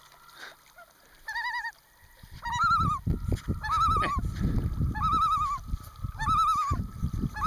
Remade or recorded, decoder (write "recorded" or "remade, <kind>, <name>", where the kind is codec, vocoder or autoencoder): recorded